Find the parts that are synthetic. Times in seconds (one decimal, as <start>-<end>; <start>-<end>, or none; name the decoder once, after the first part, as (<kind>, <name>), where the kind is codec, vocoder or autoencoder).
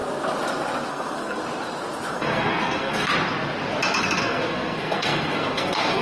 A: 0.9-1.4 (codec, SNAC); 2.1-3.1; 4.0-6.0